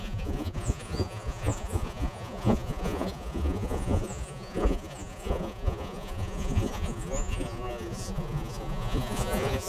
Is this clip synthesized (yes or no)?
yes